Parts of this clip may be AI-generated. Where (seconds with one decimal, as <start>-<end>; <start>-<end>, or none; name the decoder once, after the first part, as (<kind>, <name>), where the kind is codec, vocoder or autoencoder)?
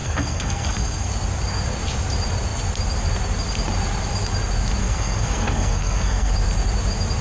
0.0-1.1 (codec, SNAC); 4.8-6.3